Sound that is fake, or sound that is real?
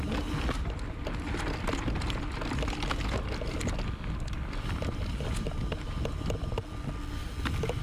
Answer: real